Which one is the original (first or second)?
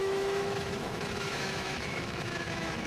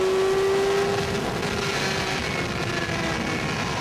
second